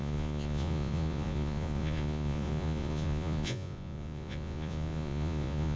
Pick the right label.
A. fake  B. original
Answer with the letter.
A